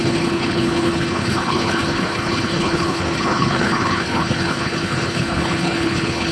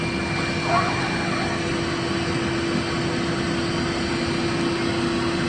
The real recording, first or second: second